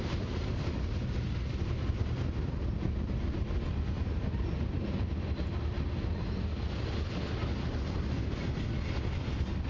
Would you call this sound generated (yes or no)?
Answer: no